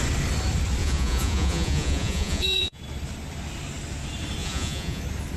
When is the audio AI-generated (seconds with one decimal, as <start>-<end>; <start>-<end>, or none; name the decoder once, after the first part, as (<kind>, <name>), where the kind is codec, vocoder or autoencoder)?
0.8-2.8 (vocoder, Vocos); 4.4-5.0